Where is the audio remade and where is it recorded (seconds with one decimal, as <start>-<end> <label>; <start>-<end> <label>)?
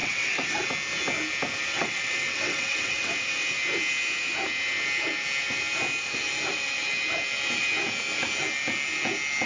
0.0-0.7 remade; 0.7-1.7 recorded; 1.7-3.1 remade; 3.1-9.5 recorded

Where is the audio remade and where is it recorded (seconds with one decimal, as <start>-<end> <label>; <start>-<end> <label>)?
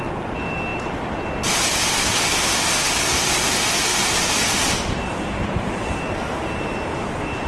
0.0-3.9 recorded; 3.9-6.0 remade; 6.0-7.5 recorded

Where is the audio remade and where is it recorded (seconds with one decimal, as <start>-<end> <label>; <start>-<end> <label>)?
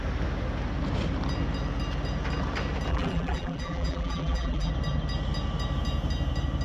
0.0-2.9 recorded; 2.9-4.7 remade; 4.7-6.6 recorded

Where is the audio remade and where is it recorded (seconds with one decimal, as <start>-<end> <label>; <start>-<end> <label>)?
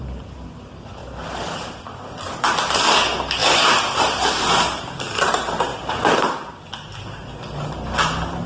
0.0-1.0 recorded; 1.0-1.7 remade; 1.7-5.7 recorded; 5.7-6.5 remade; 6.5-8.5 recorded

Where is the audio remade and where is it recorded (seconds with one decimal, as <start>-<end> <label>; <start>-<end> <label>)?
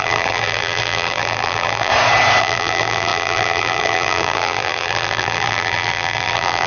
0.0-1.9 remade; 1.9-2.4 recorded; 2.4-6.7 remade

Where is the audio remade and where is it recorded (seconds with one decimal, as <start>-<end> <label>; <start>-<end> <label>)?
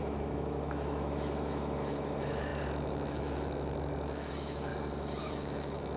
0.0-4.7 remade; 4.7-5.2 recorded; 5.2-6.0 remade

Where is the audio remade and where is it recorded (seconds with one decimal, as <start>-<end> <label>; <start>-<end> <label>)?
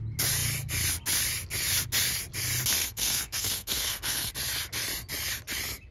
0.0-2.8 recorded; 2.8-4.3 remade; 4.3-5.9 recorded